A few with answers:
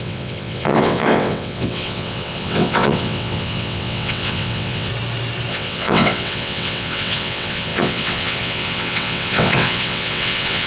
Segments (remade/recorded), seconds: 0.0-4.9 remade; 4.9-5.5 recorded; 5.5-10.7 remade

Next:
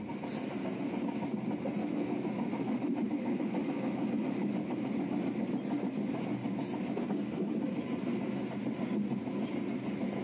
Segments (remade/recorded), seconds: 0.0-1.8 recorded; 1.8-5.1 remade; 5.1-10.2 recorded